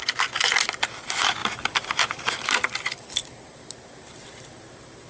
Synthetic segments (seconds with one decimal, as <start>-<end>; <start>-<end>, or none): none